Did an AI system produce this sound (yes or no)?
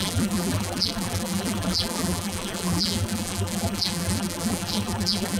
yes